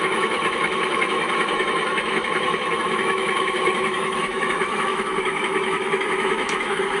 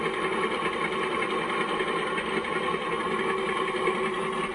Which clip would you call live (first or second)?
second